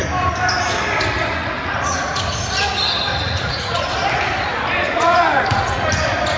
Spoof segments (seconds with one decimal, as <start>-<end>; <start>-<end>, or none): 1.4-2.2; 3.1-3.9; 4.8-5.9